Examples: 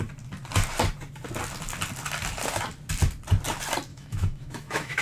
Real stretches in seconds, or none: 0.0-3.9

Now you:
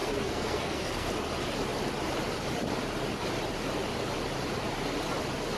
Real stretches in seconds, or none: 1.1-5.6